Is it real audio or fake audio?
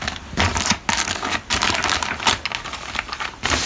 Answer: real